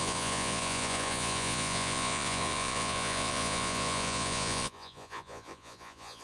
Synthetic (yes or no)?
yes